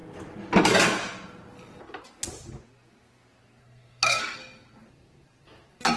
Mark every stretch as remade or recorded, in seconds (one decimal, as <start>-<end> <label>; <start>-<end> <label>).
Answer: 0.0-3.6 recorded; 3.6-4.4 remade; 4.4-6.0 recorded